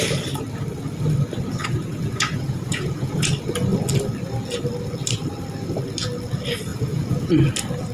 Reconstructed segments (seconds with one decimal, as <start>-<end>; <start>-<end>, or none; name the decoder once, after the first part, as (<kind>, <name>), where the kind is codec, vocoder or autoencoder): 1.6-3.3 (vocoder, Vocos); 6.7-7.3